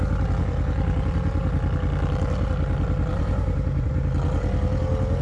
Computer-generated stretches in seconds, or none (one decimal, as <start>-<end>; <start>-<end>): 3.1-4.0